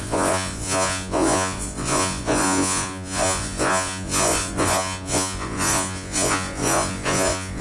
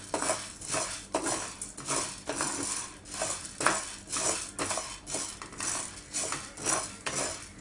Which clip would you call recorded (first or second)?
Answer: second